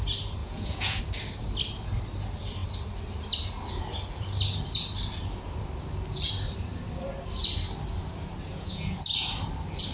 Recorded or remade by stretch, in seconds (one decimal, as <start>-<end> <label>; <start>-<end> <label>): 0.0-0.4 recorded; 0.4-1.0 remade; 1.0-8.5 recorded; 8.5-9.0 remade; 9.0-9.9 recorded